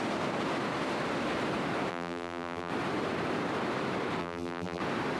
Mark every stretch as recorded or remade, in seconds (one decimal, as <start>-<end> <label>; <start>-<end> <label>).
0.0-1.9 recorded; 1.9-2.7 remade; 2.7-4.2 recorded; 4.2-4.8 remade; 4.8-5.2 recorded